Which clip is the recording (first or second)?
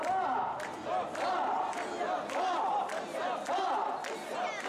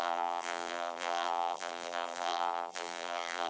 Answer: first